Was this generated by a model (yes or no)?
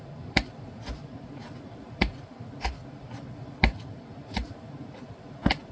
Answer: yes